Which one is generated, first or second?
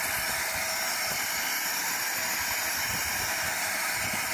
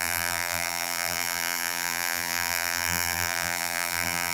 second